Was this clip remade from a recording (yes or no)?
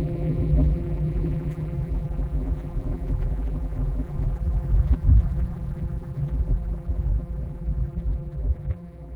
yes